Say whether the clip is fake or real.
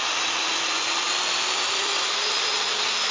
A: real